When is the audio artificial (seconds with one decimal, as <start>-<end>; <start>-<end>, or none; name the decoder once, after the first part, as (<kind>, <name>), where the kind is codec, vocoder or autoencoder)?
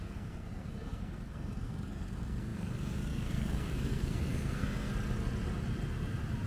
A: 0.0-4.9 (codec, SNAC)